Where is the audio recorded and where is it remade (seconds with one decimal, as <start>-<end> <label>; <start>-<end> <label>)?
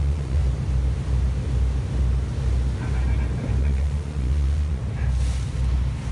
0.0-0.4 remade; 0.4-3.6 recorded; 3.6-4.8 remade; 4.8-6.1 recorded